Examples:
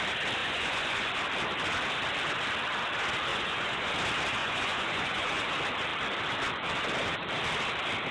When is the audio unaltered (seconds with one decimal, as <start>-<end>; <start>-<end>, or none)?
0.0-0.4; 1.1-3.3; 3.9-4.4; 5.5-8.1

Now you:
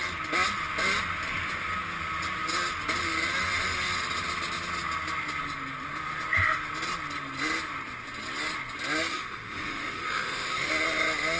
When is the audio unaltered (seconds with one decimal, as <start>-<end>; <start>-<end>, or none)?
0.0-9.1; 10.7-11.4

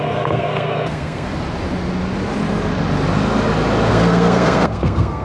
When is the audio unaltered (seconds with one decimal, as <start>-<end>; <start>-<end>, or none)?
1.3-3.9